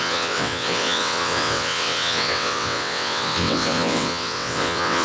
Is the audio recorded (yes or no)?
no